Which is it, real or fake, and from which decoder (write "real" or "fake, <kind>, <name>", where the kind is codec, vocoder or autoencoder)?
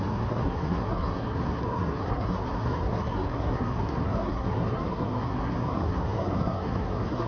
fake, codec, SNAC